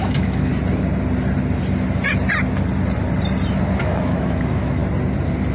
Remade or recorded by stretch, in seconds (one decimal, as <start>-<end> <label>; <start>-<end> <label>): 0.0-0.5 remade; 0.5-3.8 recorded; 3.8-4.8 remade; 4.8-5.5 recorded